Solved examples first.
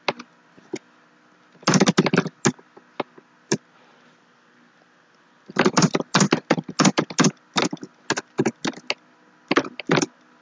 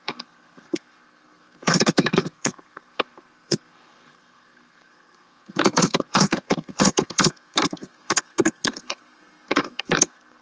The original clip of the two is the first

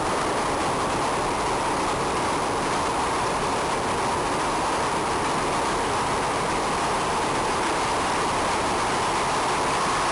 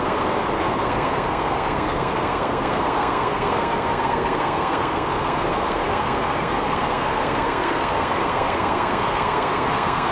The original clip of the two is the first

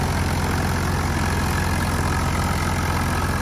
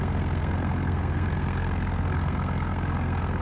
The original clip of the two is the first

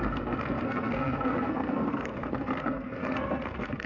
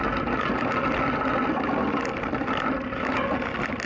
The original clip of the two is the second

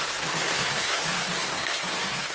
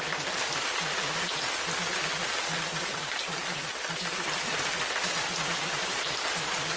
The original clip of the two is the second